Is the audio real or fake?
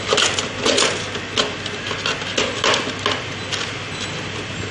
real